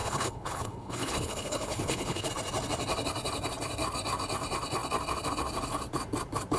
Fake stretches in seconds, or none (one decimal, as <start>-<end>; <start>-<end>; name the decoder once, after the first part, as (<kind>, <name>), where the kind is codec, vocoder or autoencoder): 0.0-2.3 (codec, HILCodec)